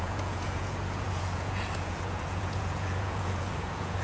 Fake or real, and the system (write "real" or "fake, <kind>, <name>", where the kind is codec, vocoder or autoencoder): fake, vocoder, Vocos